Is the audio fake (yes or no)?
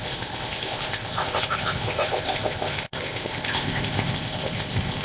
yes